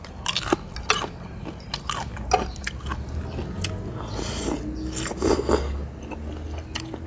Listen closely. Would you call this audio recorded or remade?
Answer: recorded